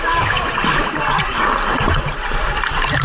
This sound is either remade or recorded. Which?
remade